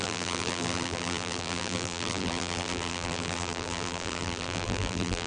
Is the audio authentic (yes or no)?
no